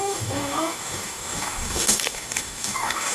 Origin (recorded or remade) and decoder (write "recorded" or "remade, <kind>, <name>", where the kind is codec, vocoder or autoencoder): remade, codec, DAC